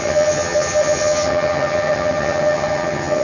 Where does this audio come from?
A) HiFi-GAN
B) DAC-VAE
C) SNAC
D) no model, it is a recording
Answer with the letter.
A